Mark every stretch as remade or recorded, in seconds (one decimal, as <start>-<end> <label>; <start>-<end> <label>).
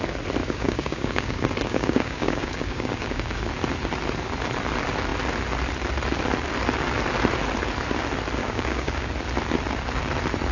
0.0-0.4 recorded; 0.4-3.5 remade; 3.5-8.4 recorded; 8.4-9.1 remade; 9.1-10.5 recorded